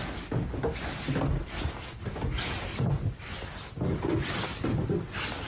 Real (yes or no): yes